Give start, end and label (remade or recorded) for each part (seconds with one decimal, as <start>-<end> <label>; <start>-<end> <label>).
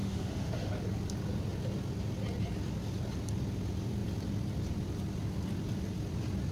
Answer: 0.0-0.7 remade; 0.7-6.5 recorded